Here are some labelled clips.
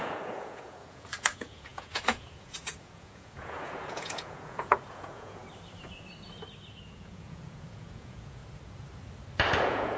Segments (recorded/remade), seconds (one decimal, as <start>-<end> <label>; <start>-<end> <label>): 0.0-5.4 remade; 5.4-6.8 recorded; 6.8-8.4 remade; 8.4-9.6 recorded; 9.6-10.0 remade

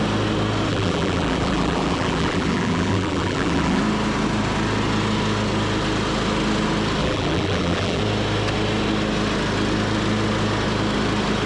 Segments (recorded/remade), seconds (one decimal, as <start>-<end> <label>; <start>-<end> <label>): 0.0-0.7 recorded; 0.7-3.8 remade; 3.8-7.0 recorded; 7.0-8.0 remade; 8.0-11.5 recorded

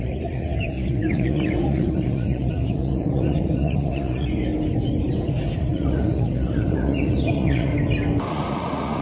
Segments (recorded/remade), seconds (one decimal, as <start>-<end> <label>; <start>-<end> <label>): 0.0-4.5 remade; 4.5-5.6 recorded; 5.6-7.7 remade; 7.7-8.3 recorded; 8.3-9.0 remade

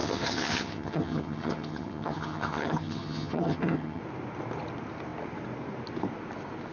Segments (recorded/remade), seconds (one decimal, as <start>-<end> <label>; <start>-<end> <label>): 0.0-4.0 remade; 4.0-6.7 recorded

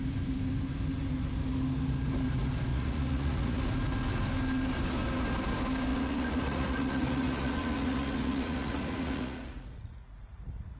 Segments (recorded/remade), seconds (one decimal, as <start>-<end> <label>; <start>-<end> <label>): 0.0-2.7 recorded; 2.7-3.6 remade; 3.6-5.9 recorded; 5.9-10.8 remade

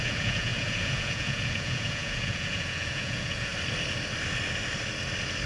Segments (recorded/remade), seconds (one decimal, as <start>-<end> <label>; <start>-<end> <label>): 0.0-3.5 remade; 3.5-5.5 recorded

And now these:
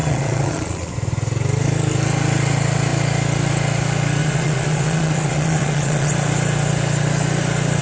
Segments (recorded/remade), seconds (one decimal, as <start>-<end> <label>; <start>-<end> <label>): 0.0-0.9 remade; 0.9-4.2 recorded; 4.2-6.1 remade; 6.1-7.8 recorded

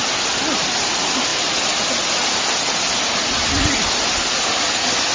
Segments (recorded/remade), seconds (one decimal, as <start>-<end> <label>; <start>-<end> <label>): 0.0-5.1 recorded